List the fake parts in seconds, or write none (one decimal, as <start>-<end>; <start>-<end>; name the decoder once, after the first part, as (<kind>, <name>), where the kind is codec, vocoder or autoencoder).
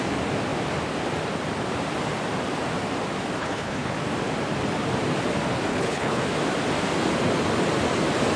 3.4-3.9 (codec, HILCodec); 5.7-6.2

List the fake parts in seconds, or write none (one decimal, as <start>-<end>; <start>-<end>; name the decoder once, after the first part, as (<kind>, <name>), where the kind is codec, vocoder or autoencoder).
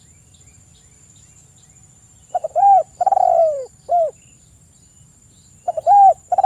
0.0-0.7 (vocoder, BigVGAN v2); 2.5-5.1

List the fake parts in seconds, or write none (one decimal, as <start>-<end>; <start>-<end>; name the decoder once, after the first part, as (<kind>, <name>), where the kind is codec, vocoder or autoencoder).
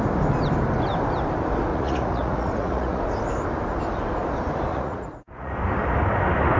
1.7-3.0 (vocoder, Vocos); 4.7-5.5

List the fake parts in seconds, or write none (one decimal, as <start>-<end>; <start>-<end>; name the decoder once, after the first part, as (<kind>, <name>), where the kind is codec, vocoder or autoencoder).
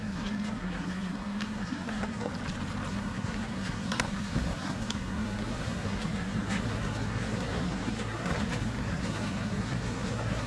0.0-2.3 (codec, SNAC); 2.9-10.5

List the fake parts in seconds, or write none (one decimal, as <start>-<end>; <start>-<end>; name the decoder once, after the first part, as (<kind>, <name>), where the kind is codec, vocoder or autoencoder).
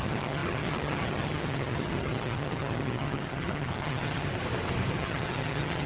0.0-4.3 (vocoder, HiFi-GAN); 4.9-5.9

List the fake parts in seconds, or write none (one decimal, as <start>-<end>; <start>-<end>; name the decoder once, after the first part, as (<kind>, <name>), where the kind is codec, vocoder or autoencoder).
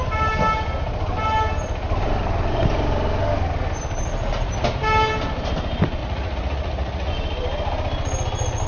6.0-7.1 (vocoder, Vocos)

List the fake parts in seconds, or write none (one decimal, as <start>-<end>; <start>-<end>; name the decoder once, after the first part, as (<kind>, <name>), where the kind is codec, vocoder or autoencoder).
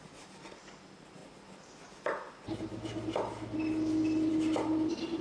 none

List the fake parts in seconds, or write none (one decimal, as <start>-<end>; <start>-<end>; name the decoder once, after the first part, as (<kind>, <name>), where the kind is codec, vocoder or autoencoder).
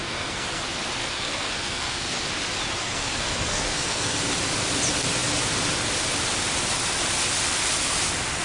0.0-0.6 (codec, SNAC); 1.0-2.2; 2.8-4.2